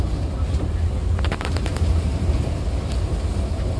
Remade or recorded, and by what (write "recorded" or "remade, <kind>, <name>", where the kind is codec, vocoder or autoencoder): recorded